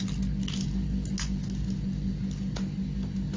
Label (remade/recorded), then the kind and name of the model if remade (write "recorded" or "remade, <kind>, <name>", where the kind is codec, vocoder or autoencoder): recorded